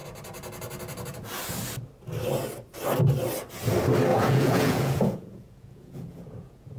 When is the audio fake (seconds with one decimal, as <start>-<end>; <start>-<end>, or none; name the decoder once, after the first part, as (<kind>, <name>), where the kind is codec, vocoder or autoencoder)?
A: 4.1-6.8 (vocoder, Vocos)